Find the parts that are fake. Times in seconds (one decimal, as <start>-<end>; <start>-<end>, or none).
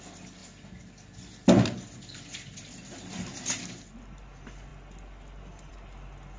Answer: none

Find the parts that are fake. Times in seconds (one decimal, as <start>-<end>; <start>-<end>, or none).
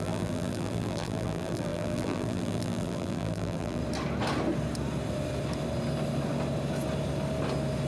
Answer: 0.0-3.8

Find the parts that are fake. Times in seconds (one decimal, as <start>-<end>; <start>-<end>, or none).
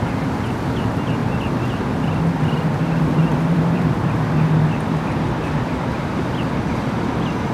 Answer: 0.0-1.2; 2.2-7.5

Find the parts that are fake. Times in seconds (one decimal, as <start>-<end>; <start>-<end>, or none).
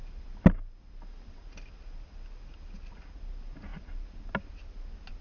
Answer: none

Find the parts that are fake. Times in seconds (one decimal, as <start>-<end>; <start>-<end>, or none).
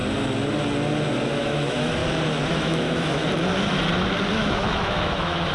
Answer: 1.3-2.0; 2.5-3.2; 4.3-5.5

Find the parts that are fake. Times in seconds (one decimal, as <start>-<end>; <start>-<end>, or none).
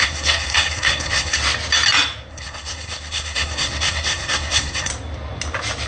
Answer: 0.0-1.4; 2.3-4.9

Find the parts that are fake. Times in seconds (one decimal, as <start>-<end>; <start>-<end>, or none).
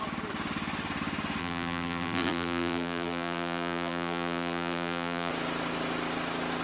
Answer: 1.4-5.3